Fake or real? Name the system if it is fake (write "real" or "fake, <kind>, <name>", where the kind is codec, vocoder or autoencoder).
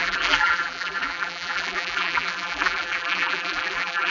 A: fake, vocoder, BigVGAN v2